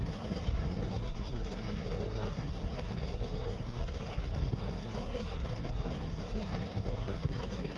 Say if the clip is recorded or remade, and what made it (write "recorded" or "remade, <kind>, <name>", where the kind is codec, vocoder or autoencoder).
remade, codec, SNAC